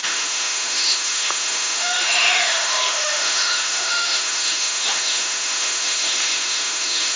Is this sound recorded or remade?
remade